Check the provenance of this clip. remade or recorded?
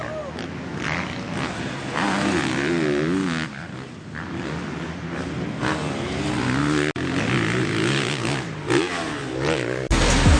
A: recorded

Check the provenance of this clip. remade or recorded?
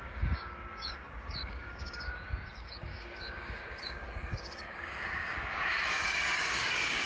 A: remade